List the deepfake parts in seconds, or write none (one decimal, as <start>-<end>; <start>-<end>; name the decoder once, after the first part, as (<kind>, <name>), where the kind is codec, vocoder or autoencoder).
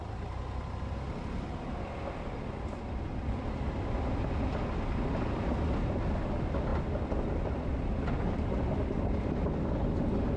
none